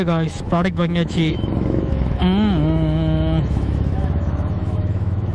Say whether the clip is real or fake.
fake